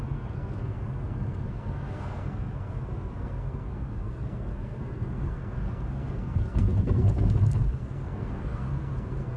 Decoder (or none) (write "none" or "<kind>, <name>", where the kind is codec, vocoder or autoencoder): codec, SNAC